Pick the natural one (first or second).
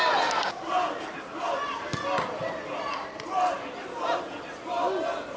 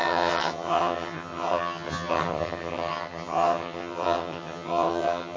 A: first